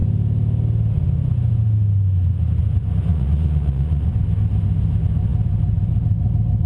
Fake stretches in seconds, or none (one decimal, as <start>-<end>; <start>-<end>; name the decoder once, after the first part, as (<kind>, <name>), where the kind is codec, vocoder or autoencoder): 3.1-4.1 (vocoder, Vocos)